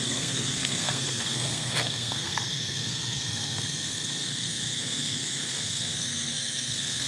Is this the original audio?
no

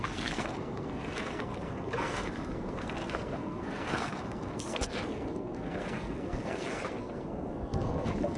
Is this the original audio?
no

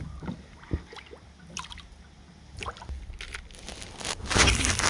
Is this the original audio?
yes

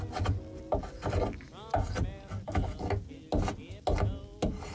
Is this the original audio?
yes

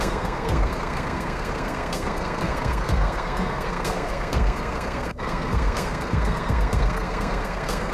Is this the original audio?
no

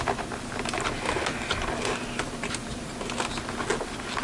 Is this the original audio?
yes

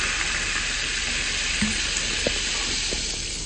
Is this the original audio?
yes